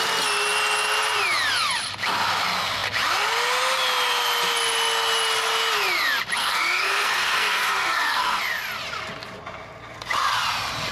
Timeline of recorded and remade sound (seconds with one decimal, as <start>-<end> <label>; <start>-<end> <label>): 0.0-6.4 recorded; 6.4-8.4 remade; 8.4-10.9 recorded